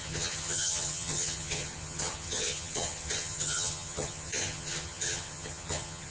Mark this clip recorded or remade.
remade